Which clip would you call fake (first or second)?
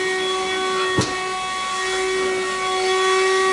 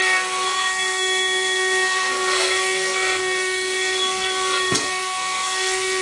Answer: second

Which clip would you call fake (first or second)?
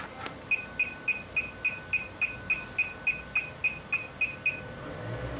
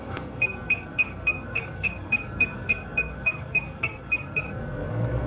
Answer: second